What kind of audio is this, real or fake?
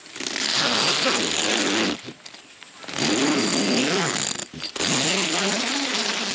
real